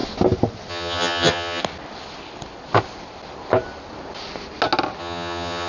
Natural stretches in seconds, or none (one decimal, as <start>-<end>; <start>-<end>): 0.0-0.7; 1.6-5.0